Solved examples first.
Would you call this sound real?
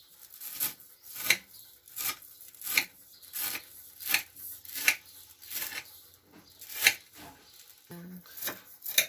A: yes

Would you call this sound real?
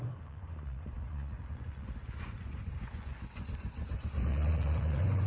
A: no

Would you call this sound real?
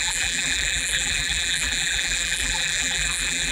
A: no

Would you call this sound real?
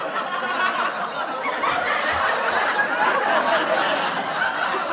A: yes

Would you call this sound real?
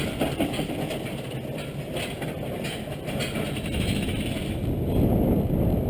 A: yes